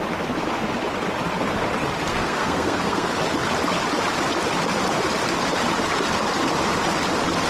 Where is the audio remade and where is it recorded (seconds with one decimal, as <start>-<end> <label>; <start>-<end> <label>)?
0.0-2.1 recorded; 2.1-3.1 remade; 3.1-7.5 recorded